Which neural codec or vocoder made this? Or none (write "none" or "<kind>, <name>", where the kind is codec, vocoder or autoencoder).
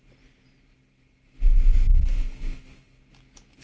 none